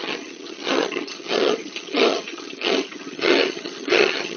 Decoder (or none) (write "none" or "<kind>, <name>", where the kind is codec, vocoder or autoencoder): vocoder, HiFi-GAN